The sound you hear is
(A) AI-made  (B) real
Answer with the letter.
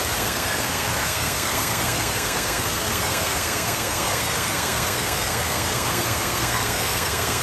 A